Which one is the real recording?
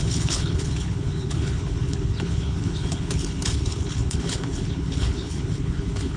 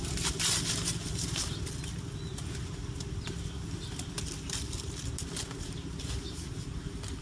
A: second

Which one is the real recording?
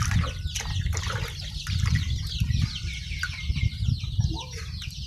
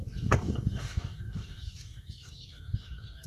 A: first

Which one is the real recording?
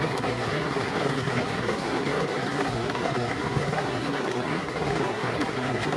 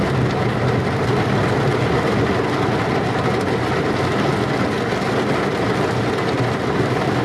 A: second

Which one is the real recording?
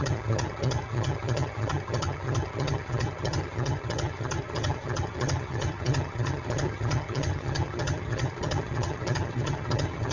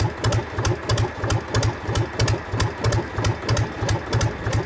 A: second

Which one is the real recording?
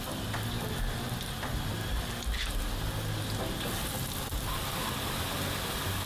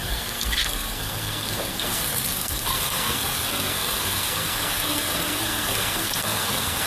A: first